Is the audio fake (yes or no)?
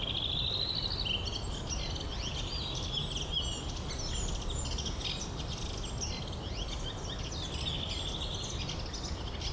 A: no